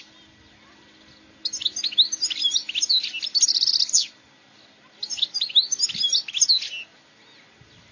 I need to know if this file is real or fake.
real